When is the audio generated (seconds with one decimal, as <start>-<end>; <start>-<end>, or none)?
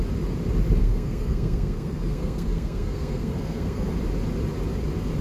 0.8-3.9